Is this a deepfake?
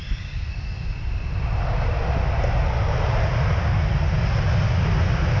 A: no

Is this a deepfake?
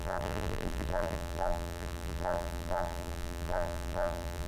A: yes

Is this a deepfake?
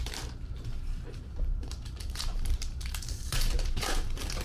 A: yes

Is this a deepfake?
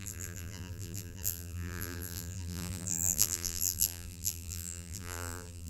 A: yes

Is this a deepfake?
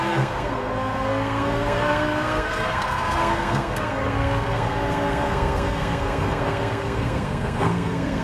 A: yes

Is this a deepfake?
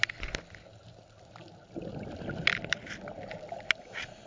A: no